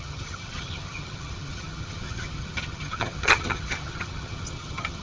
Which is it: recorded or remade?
remade